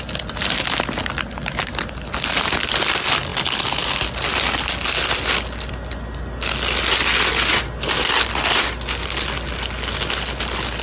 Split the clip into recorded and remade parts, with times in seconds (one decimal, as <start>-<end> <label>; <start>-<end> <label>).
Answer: 0.0-10.8 recorded